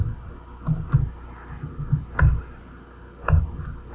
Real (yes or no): yes